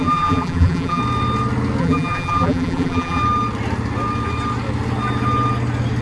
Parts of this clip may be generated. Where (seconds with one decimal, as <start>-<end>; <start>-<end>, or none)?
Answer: 0.0-1.0; 1.8-3.2